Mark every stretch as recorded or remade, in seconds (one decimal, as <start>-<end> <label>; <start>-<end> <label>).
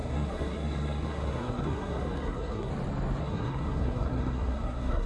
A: 0.0-2.7 remade; 2.7-3.2 recorded; 3.2-5.1 remade